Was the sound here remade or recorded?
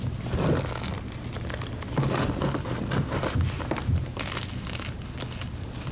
recorded